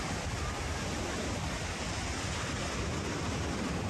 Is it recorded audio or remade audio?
recorded